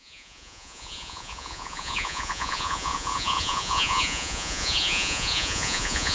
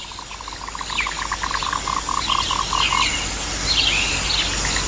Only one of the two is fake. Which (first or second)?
first